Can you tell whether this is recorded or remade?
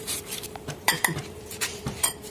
remade